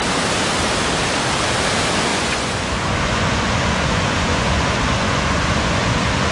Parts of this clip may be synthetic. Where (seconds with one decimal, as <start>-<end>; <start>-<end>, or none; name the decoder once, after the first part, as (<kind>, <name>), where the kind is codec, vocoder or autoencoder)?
2.1-6.3 (vocoder, Vocos)